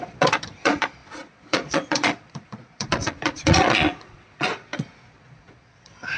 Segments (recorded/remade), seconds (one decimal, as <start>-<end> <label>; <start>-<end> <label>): 0.0-6.2 remade